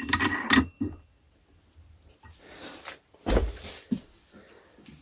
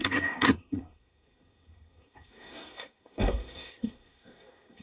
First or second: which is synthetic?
second